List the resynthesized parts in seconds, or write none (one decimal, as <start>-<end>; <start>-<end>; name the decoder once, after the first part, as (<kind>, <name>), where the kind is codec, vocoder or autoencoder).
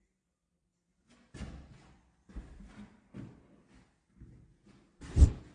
none